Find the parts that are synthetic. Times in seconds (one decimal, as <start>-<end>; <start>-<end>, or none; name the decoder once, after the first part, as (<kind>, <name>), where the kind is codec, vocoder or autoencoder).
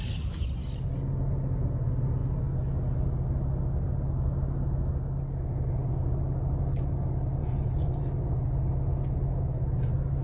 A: 7.4-8.0 (vocoder, Vocos)